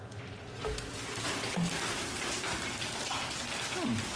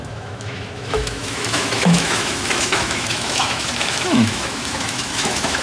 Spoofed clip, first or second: second